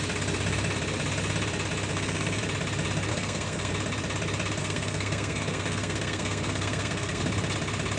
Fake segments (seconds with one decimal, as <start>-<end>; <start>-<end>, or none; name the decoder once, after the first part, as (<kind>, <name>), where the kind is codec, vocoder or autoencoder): 1.9-2.4 (codec, SNAC); 3.1-3.7; 4.6-7.2